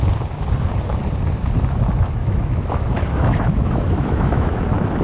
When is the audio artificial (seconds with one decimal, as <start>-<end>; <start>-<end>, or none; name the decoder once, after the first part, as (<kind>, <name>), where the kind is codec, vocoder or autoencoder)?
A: 2.2-4.6 (autoencoder, DAC-VAE)